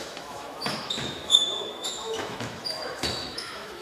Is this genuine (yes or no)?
no